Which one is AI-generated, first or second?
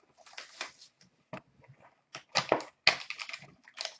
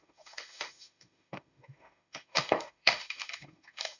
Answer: second